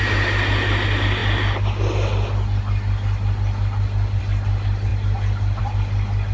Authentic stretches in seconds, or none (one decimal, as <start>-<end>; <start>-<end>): 0.0-6.3